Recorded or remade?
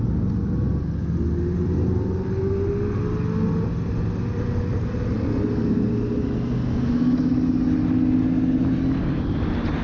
recorded